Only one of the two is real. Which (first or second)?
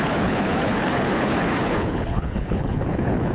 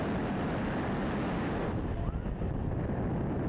second